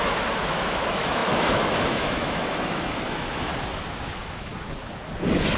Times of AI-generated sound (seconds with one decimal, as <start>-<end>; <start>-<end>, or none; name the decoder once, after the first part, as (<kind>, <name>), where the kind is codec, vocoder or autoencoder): 0.0-3.5 (autoencoder, DAC-VAE); 4.1-4.5